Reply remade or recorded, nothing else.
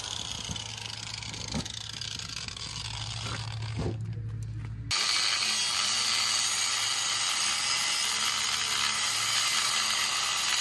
recorded